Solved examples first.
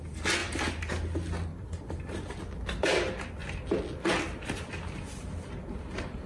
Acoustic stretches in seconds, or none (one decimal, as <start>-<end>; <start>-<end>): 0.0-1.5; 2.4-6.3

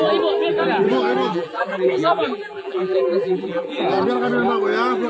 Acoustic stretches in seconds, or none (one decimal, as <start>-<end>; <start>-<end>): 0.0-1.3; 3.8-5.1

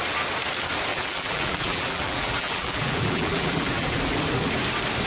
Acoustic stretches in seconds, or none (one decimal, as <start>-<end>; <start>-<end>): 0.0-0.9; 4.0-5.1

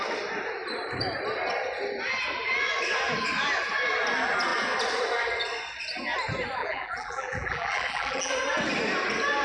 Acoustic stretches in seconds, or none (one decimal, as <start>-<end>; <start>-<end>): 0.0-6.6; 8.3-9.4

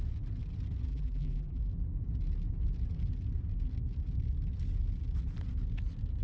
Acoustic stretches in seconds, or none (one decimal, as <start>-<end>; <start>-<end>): 0.0-0.9; 1.7-6.2

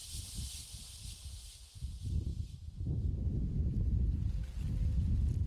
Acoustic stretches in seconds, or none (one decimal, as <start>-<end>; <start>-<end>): 0.0-5.5

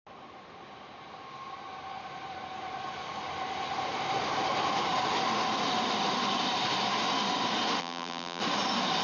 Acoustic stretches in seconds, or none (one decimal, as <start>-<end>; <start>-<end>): 0.0-7.8; 8.4-9.0